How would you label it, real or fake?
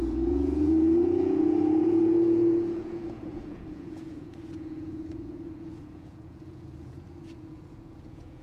fake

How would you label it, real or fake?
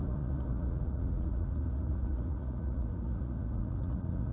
fake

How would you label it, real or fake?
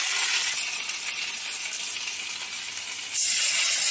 real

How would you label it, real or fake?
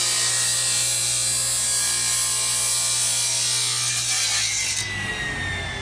real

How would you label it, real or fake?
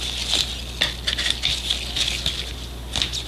real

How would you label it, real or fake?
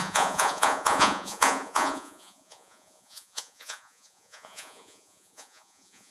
fake